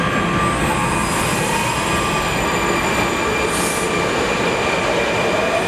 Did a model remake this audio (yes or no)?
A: no